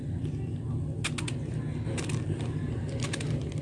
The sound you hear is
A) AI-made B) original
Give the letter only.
B